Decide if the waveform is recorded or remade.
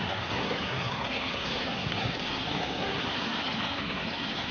remade